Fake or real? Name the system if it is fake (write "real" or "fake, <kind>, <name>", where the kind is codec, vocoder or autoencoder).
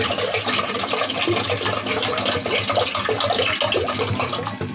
real